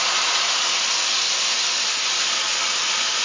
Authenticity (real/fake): real